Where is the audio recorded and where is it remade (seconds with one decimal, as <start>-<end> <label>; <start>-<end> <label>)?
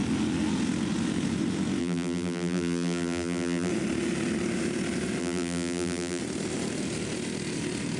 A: 0.0-1.8 recorded; 1.8-3.7 remade; 3.7-5.2 recorded; 5.2-6.2 remade; 6.2-8.0 recorded